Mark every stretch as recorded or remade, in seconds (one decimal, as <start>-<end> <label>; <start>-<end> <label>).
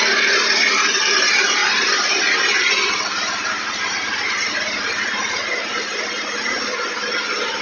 0.0-7.6 recorded